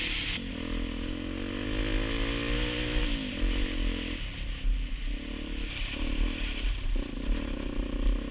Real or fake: real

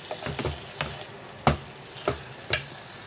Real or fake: real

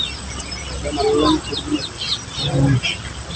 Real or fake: real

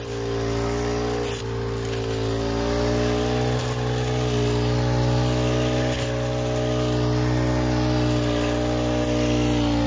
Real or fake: real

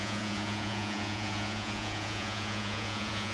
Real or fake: fake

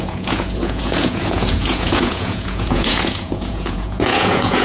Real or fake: fake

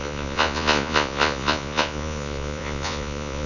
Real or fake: fake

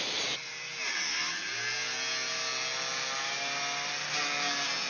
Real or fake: real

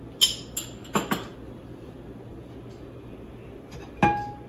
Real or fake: real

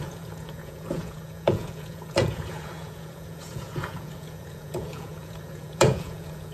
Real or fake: fake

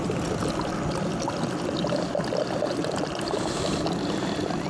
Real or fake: real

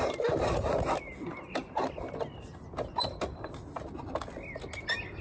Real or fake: real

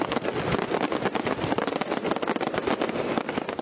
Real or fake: real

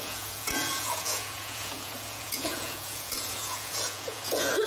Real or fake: fake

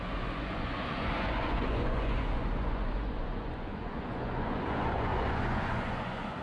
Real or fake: fake